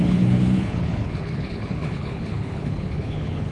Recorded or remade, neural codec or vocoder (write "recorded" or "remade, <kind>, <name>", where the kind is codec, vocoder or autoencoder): remade, codec, HILCodec